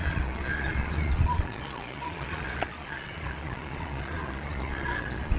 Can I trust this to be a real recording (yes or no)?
no